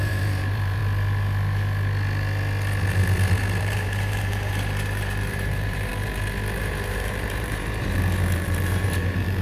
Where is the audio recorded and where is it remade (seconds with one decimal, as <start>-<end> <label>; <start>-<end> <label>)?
0.0-0.8 remade; 0.8-3.6 recorded; 3.6-5.9 remade; 5.9-6.6 recorded; 6.6-9.4 remade